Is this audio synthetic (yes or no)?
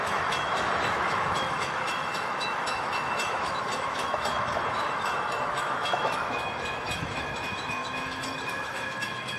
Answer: yes